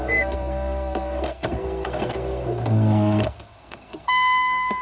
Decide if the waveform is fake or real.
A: fake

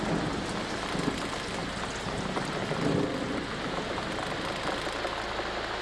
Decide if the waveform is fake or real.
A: real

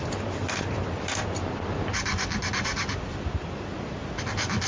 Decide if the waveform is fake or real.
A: real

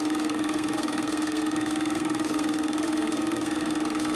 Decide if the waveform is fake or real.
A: fake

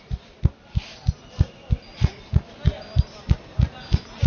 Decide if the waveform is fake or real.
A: real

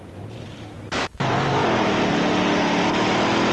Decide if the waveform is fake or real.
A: real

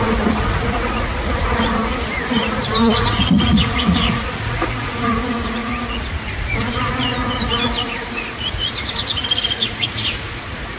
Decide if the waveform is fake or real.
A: fake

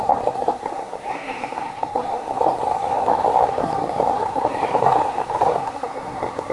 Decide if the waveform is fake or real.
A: fake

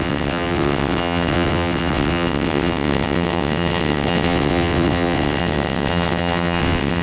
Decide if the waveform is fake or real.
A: fake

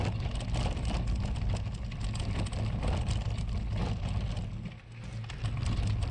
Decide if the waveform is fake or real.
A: real